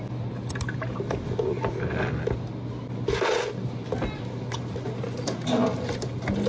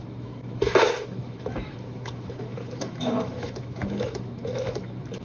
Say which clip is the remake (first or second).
second